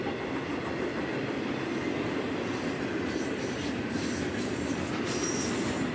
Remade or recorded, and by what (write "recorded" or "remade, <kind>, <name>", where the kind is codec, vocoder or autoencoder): recorded